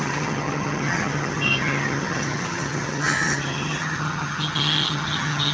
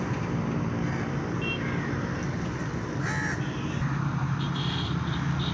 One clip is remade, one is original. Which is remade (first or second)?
first